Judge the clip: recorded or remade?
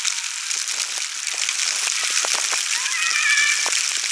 recorded